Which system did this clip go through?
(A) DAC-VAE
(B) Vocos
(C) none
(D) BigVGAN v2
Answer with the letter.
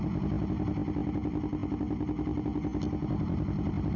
C